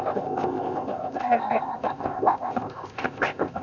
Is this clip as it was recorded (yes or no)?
no